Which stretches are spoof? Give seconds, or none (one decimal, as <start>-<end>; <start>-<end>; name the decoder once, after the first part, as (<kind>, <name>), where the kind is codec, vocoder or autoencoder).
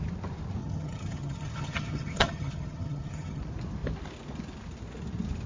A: 0.6-3.4 (vocoder, HiFi-GAN)